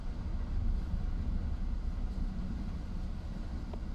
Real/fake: real